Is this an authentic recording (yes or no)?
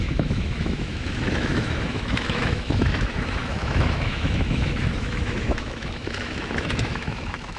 no